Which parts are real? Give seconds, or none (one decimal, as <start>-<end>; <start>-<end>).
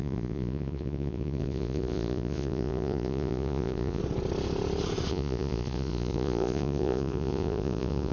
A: 4.0-5.1